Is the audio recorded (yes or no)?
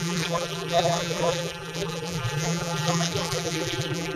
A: no